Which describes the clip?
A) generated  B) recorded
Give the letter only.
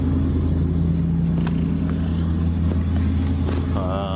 B